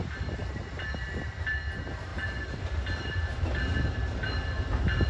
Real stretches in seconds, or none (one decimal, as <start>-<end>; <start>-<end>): 0.0-5.1